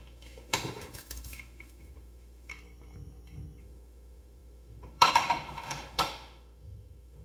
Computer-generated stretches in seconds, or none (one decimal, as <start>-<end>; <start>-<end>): 0.0-2.5; 3.6-7.2